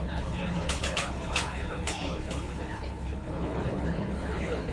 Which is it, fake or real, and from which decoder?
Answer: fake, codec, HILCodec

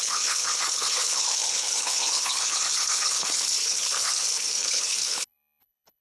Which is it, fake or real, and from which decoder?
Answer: fake, codec, HILCodec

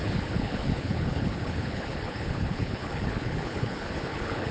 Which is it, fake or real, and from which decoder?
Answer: fake, codec, HILCodec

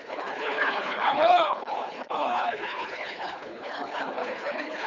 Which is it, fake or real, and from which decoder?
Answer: fake, codec, HILCodec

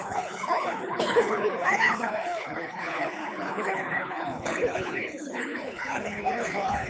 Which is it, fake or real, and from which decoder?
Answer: fake, codec, HILCodec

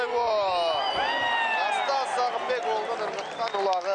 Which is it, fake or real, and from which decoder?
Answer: real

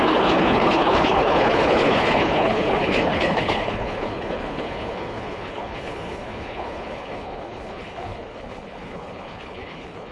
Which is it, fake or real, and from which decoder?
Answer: fake, codec, HILCodec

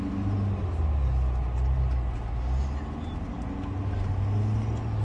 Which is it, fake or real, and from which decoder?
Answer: real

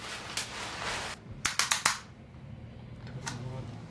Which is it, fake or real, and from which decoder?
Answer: real